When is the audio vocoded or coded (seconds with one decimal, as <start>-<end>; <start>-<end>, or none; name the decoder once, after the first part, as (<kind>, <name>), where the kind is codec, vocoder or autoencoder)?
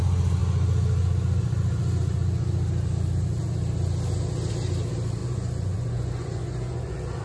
5.2-7.2 (vocoder, Vocos)